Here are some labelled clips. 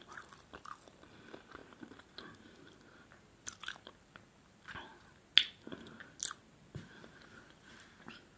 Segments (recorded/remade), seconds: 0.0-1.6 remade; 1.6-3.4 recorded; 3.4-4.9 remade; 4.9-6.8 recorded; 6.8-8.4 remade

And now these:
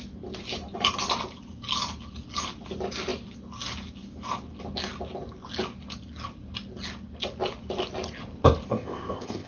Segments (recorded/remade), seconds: 0.0-8.7 recorded; 8.7-9.5 remade

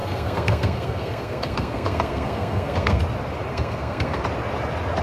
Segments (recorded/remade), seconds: 0.0-3.0 remade; 3.0-3.5 recorded; 3.5-4.2 remade; 4.2-5.0 recorded